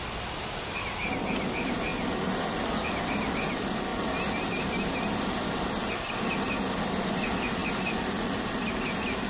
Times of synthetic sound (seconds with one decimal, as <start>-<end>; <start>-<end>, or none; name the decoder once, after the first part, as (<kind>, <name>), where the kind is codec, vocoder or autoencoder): 3.9-6.1 (vocoder, BigVGAN v2); 7.6-8.2